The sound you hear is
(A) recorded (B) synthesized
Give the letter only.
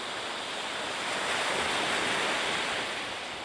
A